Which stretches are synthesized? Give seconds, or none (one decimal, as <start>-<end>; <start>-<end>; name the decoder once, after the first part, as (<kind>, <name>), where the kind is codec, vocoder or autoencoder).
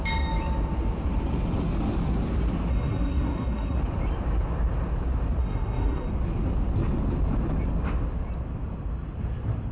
2.7-3.8 (codec, SNAC); 5.4-6.1